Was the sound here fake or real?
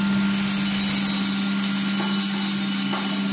real